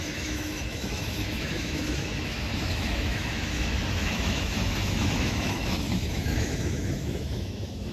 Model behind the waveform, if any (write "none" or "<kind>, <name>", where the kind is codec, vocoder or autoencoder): autoencoder, DAC-VAE